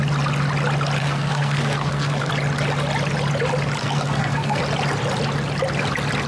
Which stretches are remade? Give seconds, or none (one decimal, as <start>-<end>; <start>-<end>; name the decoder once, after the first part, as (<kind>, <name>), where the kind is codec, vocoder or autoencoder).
1.0-2.3 (codec, SNAC); 3.8-4.6

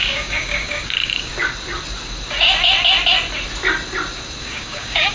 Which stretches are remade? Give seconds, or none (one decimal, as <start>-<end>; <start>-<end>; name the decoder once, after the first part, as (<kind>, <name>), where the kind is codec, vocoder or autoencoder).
0.0-1.3 (codec, DAC); 4.4-5.1

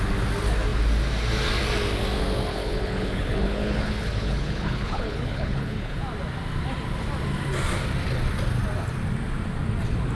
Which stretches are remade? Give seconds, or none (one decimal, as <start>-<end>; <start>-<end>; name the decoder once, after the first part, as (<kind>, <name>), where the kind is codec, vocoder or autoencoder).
2.5-6.0 (codec, HILCodec)

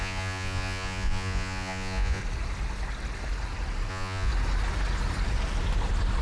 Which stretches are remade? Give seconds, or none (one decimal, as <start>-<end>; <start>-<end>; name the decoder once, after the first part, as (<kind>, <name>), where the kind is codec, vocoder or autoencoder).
0.0-2.2 (vocoder, Vocos); 3.9-4.3

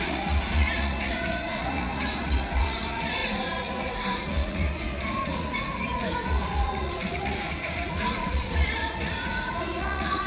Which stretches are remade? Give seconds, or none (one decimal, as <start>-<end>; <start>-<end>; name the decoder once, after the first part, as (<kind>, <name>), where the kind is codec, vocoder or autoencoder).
0.0-10.3 (vocoder, Vocos)